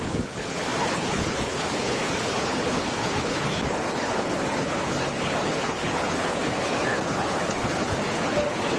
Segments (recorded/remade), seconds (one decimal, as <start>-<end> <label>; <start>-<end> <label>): 0.0-8.8 remade

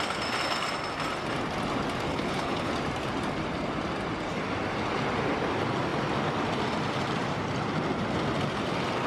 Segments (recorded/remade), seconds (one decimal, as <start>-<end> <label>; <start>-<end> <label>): 0.0-2.1 recorded; 2.1-2.7 remade; 2.7-9.1 recorded